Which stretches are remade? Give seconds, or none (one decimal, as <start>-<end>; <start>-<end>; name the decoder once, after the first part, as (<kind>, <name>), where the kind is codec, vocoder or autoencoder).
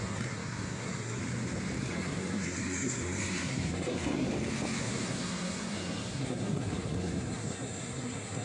0.0-1.2 (codec, SNAC); 1.8-4.3; 4.8-8.4